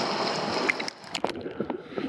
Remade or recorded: recorded